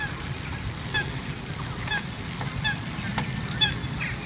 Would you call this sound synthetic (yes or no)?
no